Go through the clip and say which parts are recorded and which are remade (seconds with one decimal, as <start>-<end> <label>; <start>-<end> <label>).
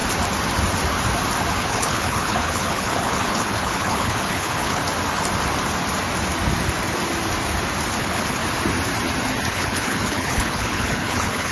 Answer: 0.0-1.6 recorded; 1.6-4.8 remade; 4.8-8.0 recorded; 8.0-8.4 remade; 8.4-9.5 recorded; 9.5-11.5 remade